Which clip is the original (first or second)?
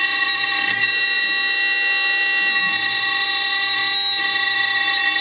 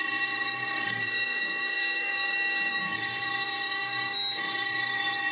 first